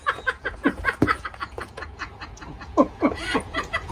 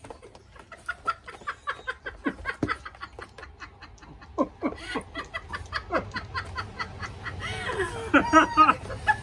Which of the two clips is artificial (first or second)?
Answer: first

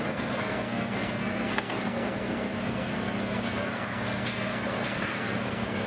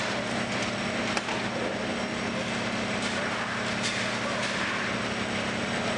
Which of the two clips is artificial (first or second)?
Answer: first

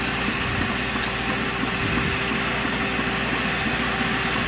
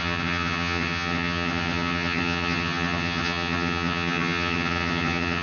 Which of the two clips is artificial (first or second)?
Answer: second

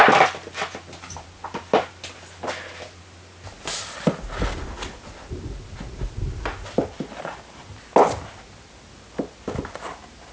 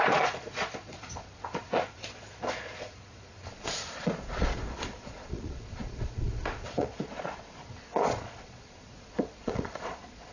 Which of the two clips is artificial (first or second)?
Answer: second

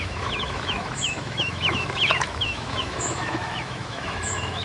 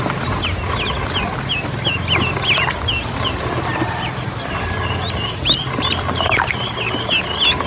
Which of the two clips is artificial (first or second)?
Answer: first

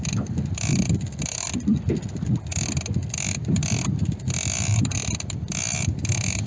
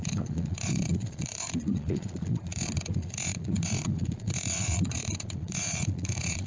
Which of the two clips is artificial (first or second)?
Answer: second